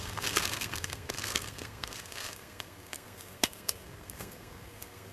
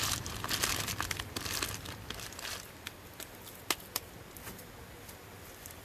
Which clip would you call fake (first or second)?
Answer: first